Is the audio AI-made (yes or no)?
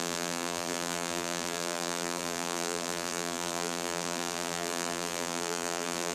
yes